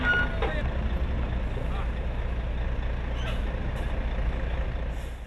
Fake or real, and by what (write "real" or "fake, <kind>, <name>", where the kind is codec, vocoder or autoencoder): real